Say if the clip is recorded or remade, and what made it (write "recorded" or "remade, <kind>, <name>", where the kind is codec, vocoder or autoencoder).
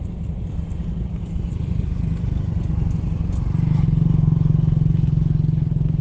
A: recorded